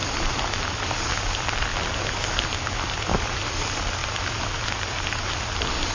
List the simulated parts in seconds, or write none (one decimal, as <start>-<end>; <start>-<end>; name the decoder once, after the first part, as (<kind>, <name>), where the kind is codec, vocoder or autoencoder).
1.2-1.7 (vocoder, BigVGAN v2); 2.2-4.0; 5.5-5.9